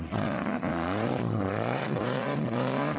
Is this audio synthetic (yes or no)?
yes